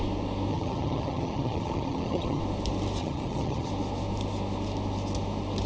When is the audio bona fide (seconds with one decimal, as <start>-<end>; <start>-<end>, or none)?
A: 0.0-0.5; 2.4-3.0; 3.7-5.7